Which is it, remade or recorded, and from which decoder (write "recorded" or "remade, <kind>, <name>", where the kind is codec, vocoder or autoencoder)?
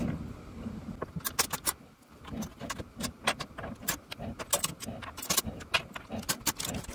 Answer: recorded